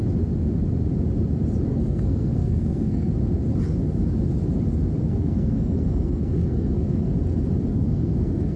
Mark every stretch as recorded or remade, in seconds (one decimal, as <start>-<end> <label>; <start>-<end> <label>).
0.0-1.7 recorded; 1.7-3.1 remade; 3.1-5.0 recorded; 5.0-7.1 remade; 7.1-7.7 recorded; 7.7-8.6 remade